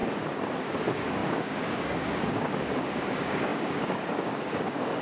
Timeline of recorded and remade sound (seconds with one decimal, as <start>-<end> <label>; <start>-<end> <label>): 0.0-0.7 recorded; 0.7-5.0 remade